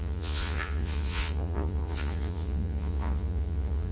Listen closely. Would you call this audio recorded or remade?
remade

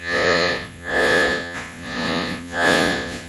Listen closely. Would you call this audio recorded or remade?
remade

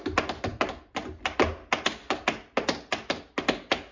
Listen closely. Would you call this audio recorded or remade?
recorded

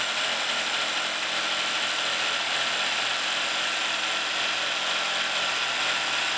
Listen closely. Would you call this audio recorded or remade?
recorded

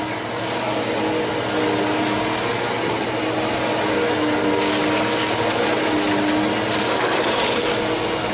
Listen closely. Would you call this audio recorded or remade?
recorded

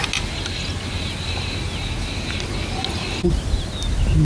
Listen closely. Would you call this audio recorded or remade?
recorded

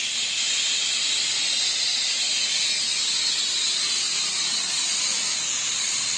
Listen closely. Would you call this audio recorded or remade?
recorded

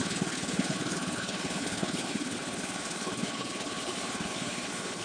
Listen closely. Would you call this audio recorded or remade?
remade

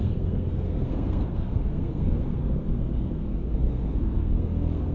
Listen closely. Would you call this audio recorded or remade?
remade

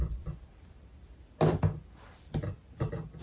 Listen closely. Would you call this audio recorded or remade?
recorded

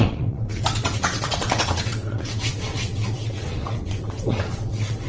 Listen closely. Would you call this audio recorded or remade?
remade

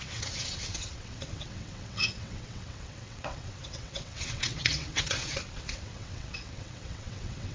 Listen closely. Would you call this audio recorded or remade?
remade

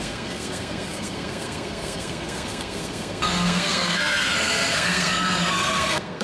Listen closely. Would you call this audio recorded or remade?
remade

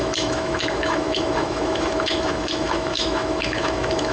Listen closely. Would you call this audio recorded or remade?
remade